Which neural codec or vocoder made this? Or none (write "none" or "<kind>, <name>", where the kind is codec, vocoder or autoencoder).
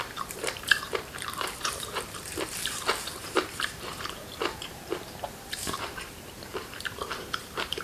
vocoder, BigVGAN v2